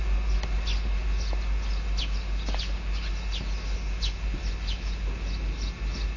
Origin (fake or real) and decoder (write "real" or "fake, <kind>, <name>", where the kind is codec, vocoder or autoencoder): real